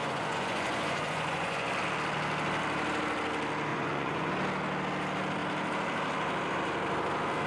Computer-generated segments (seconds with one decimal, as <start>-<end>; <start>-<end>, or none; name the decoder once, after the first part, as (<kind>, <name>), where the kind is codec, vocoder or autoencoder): 0.0-1.7 (vocoder, Vocos); 3.7-4.3